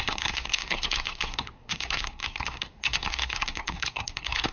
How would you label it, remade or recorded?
remade